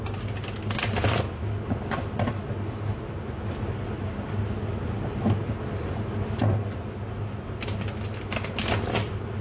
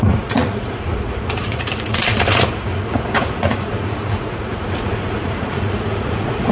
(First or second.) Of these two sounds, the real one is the first